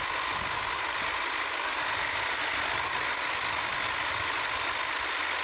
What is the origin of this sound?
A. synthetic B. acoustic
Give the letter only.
B